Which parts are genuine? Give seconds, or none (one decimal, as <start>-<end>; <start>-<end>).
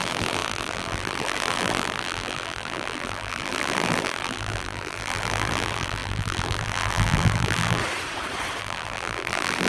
7.8-8.6